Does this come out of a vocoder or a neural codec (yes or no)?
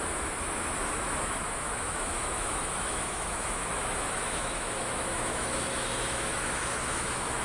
yes